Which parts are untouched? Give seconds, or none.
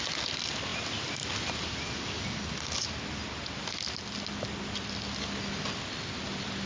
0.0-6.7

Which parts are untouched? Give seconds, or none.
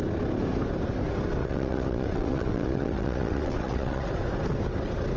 0.0-1.4; 4.1-5.2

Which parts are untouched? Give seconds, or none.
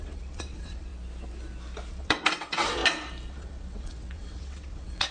0.9-1.9; 2.8-3.3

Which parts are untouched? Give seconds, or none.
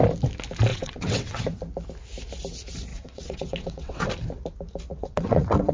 0.0-0.7; 1.4-2.9; 4.1-4.9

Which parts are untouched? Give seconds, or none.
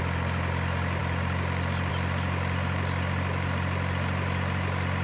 0.0-5.0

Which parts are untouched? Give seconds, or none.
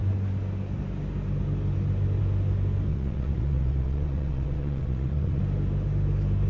0.0-2.9; 5.4-6.5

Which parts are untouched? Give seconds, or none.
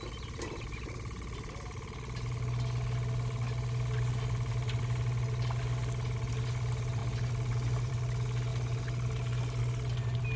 0.0-10.4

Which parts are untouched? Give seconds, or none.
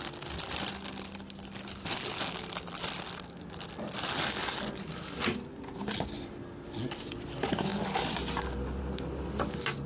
0.0-9.9